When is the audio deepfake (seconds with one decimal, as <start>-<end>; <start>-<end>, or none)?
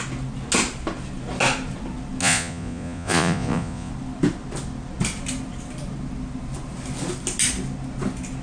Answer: 2.2-3.9